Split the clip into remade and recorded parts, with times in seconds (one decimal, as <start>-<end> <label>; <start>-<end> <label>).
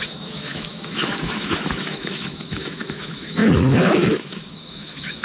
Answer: 0.0-5.2 remade